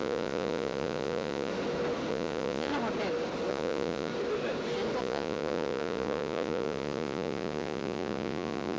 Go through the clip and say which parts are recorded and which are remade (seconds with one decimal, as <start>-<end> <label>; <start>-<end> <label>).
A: 0.0-1.5 remade; 1.5-2.1 recorded; 2.1-2.7 remade; 2.7-3.5 recorded; 3.5-4.1 remade; 4.1-5.0 recorded; 5.0-8.8 remade